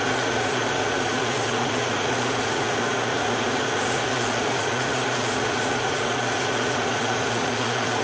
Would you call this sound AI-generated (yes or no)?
yes